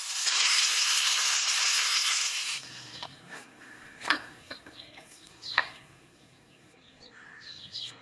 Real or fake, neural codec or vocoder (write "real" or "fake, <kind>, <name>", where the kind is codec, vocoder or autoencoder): fake, codec, SNAC